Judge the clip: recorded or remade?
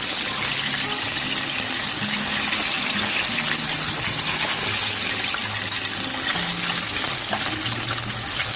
recorded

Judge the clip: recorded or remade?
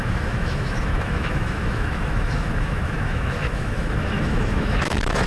remade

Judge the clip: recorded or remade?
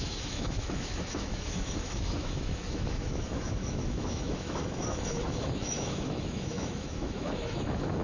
remade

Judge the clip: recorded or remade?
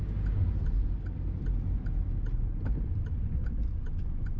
recorded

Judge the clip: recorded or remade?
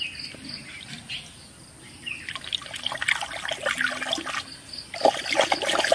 recorded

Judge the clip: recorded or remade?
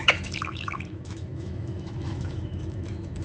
remade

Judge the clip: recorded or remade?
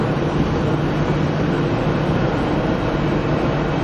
recorded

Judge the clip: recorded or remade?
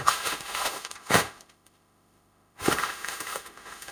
remade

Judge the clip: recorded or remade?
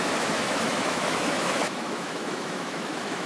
remade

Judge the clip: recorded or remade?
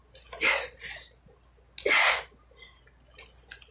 recorded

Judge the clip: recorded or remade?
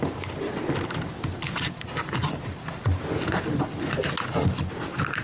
recorded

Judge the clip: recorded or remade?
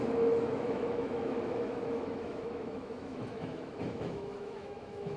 remade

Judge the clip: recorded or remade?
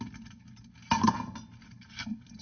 recorded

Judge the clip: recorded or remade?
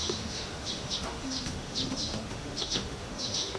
remade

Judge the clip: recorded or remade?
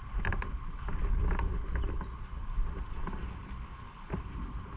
recorded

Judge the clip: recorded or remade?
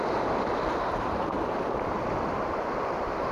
recorded